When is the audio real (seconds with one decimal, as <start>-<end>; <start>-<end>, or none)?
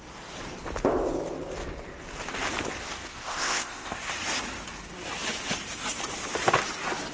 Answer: 0.0-3.1; 4.1-7.1